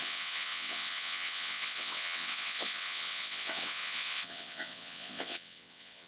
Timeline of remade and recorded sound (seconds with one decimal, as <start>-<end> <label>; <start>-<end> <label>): 0.0-6.1 remade